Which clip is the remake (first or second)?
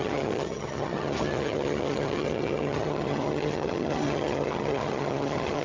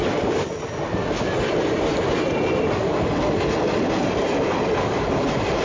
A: first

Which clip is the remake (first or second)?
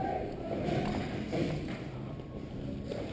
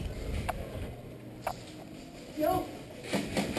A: first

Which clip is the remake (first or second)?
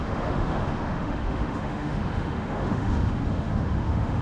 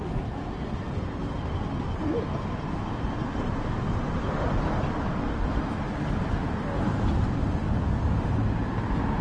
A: first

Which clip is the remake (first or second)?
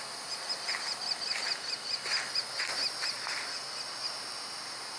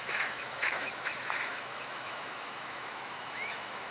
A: second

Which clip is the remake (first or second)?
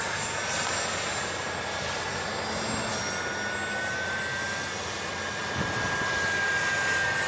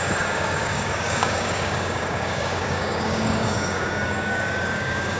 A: second